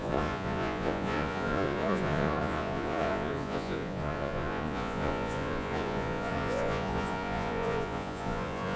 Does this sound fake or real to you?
fake